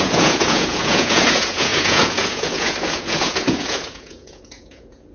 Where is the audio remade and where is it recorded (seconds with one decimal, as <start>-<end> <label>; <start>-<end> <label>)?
0.0-5.1 remade